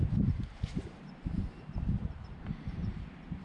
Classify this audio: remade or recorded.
remade